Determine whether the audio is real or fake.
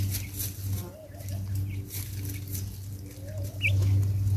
real